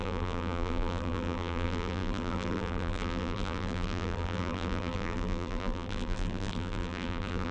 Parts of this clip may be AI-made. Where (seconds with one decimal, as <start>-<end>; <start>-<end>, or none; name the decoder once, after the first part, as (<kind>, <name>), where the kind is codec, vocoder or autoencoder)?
0.0-7.5 (vocoder, BigVGAN v2)